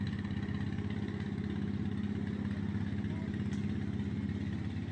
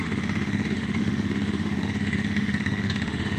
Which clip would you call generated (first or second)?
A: second